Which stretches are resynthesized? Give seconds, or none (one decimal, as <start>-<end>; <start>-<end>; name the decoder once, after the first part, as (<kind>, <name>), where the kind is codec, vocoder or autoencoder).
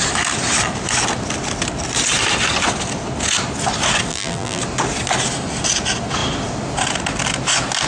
4.1-4.6 (vocoder, BigVGAN v2)